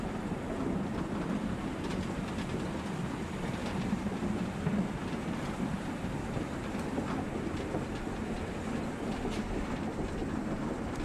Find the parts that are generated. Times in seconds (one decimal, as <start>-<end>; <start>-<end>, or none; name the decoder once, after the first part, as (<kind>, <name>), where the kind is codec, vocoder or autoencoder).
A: 3.6-4.7 (vocoder, BigVGAN v2)